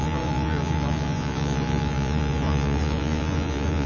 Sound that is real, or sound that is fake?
fake